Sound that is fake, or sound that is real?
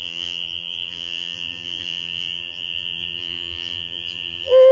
fake